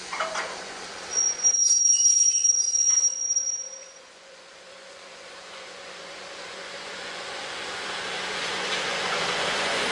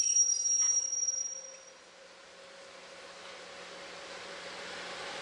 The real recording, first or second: second